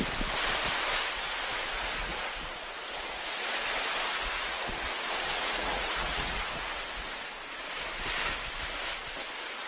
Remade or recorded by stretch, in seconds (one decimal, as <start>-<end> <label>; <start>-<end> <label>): 0.0-2.0 recorded; 2.0-3.5 remade; 3.5-4.1 recorded; 4.1-7.2 remade; 7.2-9.7 recorded